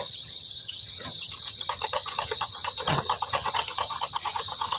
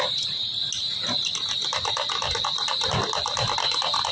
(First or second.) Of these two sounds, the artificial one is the first